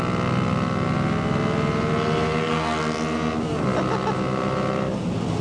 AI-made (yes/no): no